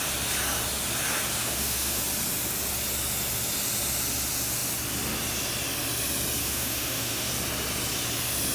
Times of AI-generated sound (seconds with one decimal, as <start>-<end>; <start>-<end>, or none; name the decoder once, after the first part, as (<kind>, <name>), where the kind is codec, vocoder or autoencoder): 1.4-2.0 (autoencoder, DAC-VAE); 6.4-7.3